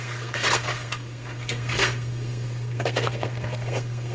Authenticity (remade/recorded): remade